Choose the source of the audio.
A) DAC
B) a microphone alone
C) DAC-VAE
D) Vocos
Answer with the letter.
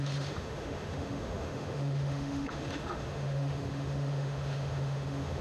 C